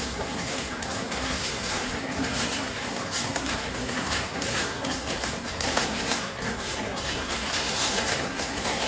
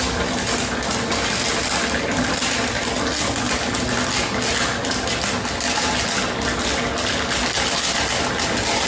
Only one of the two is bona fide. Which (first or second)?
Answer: second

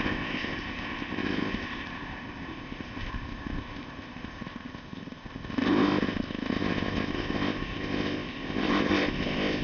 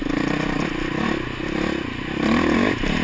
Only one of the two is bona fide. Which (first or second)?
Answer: second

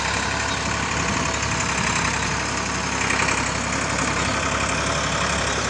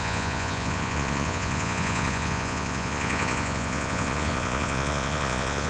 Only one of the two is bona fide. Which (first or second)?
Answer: first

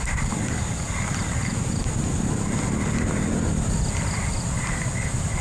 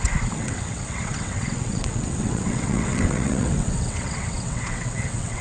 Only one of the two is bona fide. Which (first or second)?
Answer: first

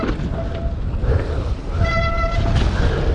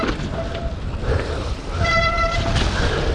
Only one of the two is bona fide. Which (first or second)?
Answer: first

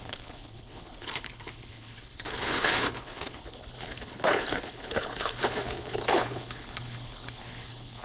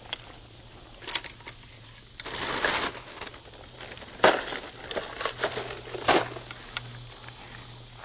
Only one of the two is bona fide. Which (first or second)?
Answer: second